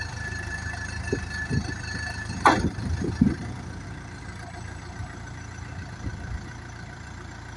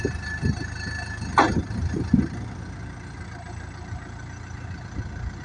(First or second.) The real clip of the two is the second